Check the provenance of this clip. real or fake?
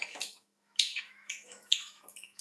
fake